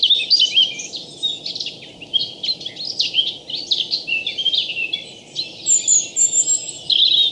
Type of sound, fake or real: real